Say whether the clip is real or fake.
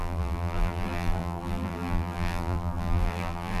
fake